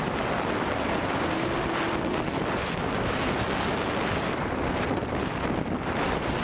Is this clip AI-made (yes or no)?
no